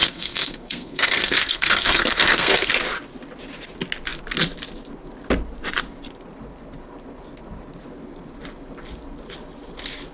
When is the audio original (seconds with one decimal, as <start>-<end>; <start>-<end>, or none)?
2.7-10.1